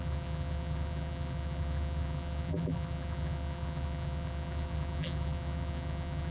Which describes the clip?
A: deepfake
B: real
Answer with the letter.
A